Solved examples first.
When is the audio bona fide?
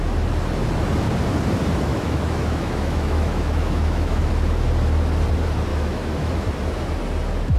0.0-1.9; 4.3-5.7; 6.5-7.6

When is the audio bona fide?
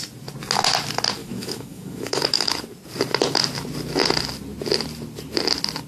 0.0-1.2; 2.5-5.9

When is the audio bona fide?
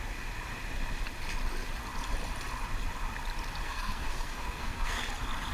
0.0-3.6; 5.1-5.5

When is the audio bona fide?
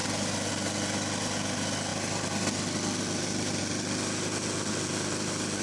0.0-5.6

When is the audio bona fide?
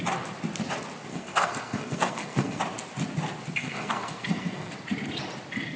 0.0-1.1; 2.6-3.6; 4.7-5.8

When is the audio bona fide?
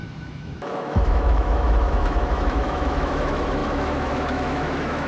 none